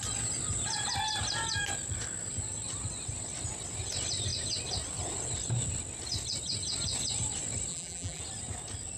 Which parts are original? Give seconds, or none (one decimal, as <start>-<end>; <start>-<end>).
0.0-7.7; 8.2-9.0